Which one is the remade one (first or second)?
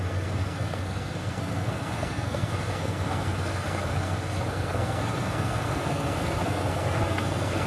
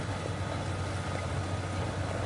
first